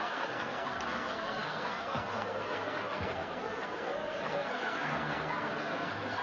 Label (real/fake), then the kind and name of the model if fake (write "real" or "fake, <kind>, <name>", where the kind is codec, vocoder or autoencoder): fake, codec, SNAC